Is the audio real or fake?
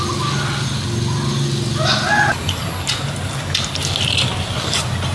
real